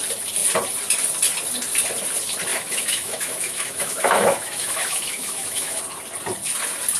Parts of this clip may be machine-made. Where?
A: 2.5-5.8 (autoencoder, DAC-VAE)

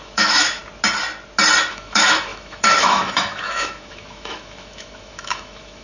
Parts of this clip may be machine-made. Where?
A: 0.0-0.6 (autoencoder, DAC-VAE); 1.6-5.8

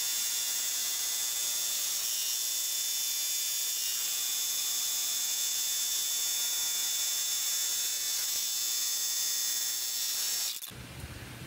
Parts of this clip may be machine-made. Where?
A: none

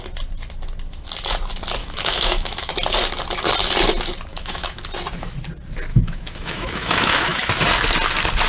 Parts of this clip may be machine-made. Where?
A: 1.8-2.7 (autoencoder, DAC-VAE); 4.3-4.8; 5.9-7.5

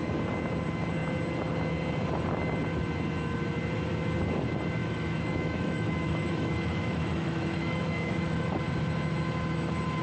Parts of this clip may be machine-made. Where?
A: 4.8-8.6 (autoencoder, DAC-VAE)